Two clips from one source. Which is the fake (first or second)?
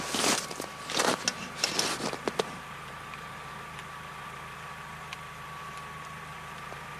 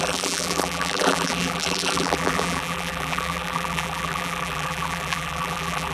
second